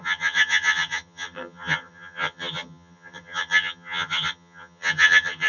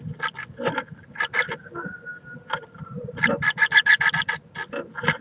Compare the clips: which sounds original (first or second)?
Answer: second